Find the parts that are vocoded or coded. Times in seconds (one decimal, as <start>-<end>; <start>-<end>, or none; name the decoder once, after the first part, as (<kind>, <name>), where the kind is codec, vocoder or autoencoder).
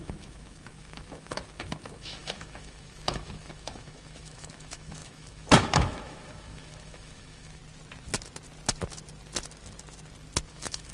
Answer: 0.0-7.6 (autoencoder, DAC-VAE); 10.5-10.9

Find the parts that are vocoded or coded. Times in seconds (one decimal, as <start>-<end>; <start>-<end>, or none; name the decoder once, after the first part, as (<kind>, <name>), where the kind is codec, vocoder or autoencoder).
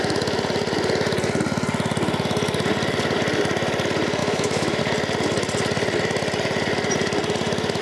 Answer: 4.2-4.8 (autoencoder, DAC-VAE)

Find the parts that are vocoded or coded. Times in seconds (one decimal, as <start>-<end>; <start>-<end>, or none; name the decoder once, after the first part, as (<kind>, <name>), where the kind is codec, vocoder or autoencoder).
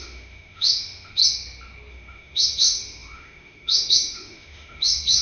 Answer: 0.0-1.2 (autoencoder, DAC-VAE); 1.9-5.2